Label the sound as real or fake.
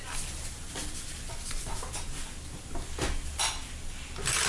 real